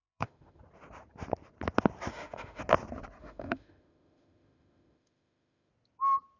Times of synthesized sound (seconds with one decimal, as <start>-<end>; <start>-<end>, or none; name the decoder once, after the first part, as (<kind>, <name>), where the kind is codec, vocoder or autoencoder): 0.0-0.6 (autoencoder, DAC-VAE); 2.1-2.6; 3.2-5.7